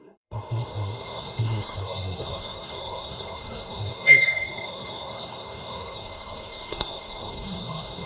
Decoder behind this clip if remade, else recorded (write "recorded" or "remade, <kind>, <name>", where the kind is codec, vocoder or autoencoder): remade, codec, SNAC